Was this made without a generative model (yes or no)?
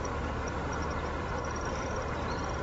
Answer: yes